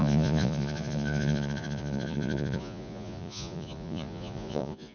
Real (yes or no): no